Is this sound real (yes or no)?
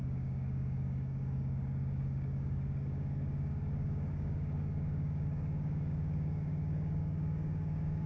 no